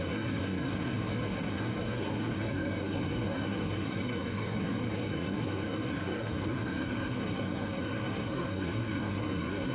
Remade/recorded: remade